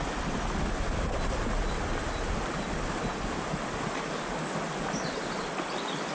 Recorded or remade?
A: recorded